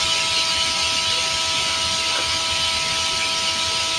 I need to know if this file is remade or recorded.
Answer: recorded